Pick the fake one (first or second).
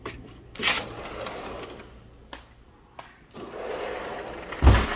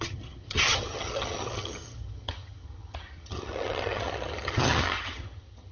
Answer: second